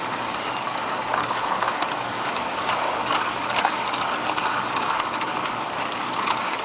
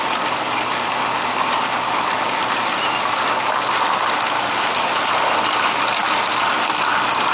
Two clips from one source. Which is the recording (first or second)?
second